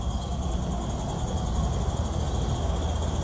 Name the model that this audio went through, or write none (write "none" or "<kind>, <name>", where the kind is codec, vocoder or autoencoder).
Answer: none